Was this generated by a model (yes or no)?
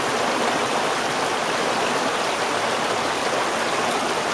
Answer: no